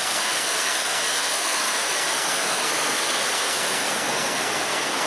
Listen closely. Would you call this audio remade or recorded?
remade